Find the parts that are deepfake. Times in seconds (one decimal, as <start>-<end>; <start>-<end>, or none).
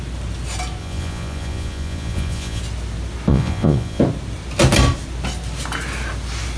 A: 0.8-2.6; 3.3-4.0